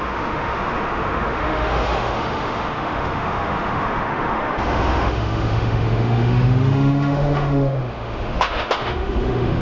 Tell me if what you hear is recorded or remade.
remade